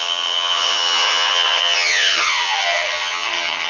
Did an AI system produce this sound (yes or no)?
yes